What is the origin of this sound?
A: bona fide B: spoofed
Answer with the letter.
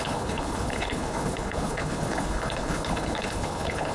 B